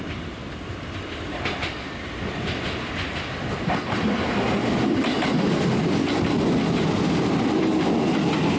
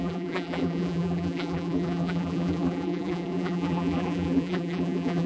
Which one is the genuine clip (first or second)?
first